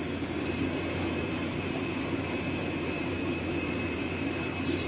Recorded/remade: remade